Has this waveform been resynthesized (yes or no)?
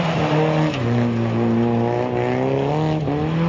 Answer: no